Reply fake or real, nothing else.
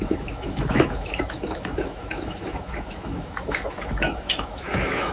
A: fake